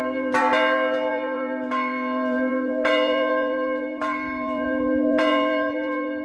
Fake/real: fake